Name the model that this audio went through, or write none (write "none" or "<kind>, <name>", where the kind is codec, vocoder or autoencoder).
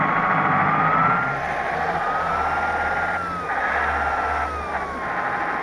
none